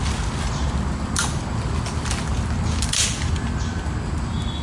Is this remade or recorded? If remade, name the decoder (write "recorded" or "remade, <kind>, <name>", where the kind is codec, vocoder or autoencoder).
recorded